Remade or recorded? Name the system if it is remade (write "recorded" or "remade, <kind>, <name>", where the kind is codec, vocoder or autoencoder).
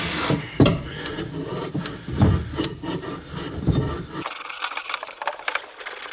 recorded